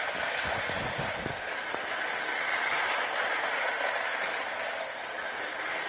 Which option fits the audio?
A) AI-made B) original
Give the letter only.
B